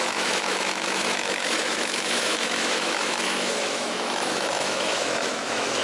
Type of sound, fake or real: fake